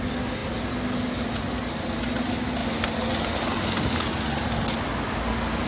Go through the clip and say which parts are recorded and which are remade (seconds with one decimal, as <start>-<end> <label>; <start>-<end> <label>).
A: 0.0-5.7 recorded